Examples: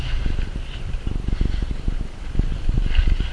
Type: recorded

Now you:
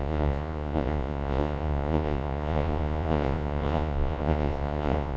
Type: remade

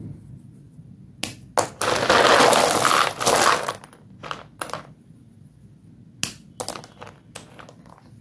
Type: recorded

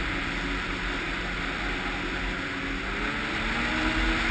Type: recorded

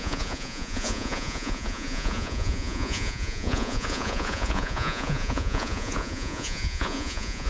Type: remade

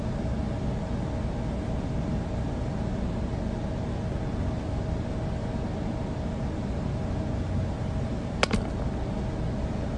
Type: recorded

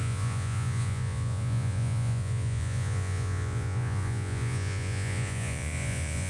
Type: remade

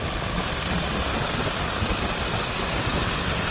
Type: recorded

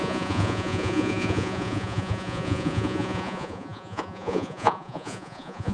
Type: remade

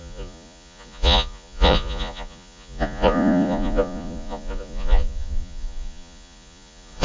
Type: remade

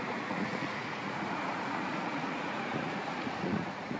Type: remade